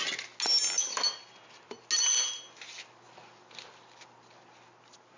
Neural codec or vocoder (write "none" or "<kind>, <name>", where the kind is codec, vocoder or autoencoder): none